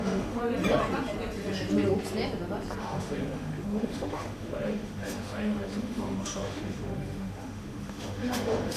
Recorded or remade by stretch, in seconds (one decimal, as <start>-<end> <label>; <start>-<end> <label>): 0.0-0.4 remade; 0.4-2.8 recorded; 2.8-8.8 remade